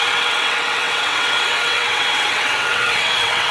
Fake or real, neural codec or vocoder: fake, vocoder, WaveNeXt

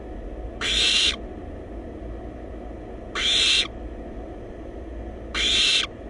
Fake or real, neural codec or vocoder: real